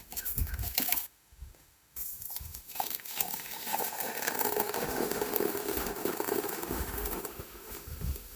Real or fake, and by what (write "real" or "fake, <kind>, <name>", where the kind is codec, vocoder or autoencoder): fake, autoencoder, DAC-VAE